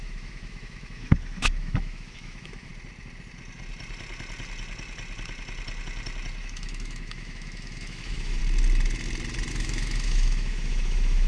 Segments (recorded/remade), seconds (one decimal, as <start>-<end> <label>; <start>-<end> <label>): 0.0-2.7 remade; 2.7-6.4 recorded; 6.4-8.4 remade; 8.4-9.5 recorded; 9.5-11.3 remade

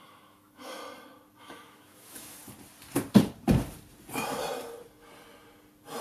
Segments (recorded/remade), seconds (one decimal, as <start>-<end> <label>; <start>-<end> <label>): 0.0-0.8 remade; 0.8-1.4 recorded; 1.4-2.4 remade; 2.4-6.0 recorded

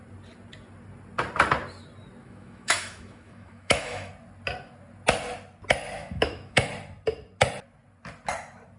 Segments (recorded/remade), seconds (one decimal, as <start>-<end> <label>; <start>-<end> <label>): 0.0-2.2 recorded; 2.2-4.1 remade; 4.1-6.0 recorded; 6.0-6.7 remade; 6.7-8.8 recorded

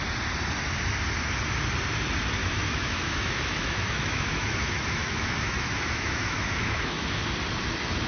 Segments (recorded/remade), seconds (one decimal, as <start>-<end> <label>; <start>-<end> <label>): 0.0-2.4 recorded; 2.4-7.2 remade; 7.2-8.1 recorded

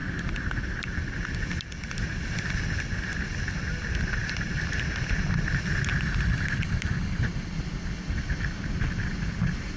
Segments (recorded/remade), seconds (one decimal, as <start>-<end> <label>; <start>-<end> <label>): 0.0-9.8 recorded

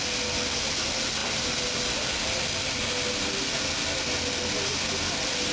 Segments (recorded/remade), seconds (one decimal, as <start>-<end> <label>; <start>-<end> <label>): 0.0-5.5 recorded